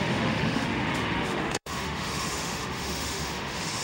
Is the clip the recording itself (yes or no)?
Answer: no